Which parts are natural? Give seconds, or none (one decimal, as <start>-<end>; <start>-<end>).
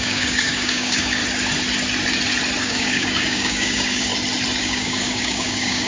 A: 1.2-2.6; 4.1-4.6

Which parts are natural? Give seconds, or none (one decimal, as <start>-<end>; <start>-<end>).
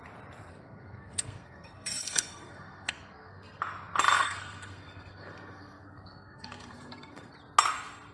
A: 0.0-0.5; 3.6-4.2; 7.3-8.1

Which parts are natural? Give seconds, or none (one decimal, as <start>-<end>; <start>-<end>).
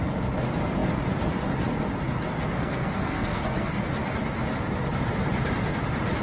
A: 0.0-2.5; 3.8-6.2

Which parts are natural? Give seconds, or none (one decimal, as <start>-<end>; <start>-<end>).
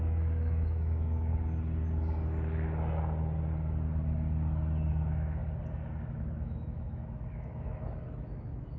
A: 1.3-4.9; 5.4-6.1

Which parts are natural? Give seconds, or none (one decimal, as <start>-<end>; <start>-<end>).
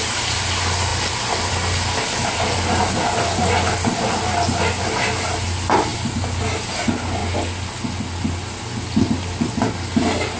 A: 0.0-10.4